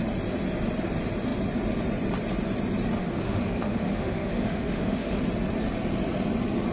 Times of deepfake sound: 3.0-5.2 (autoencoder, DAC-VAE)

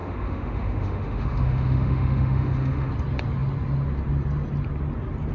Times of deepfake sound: 0.0-2.9 (autoencoder, DAC-VAE)

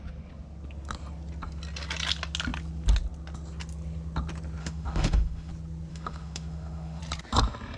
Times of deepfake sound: 4.6-5.5 (autoencoder, DAC-VAE); 5.9-7.0